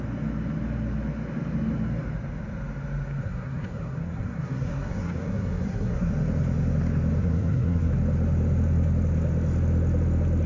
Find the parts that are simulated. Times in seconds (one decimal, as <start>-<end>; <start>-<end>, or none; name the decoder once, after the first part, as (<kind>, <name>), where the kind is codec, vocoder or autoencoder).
3.2-6.1 (codec, SNAC); 7.2-7.9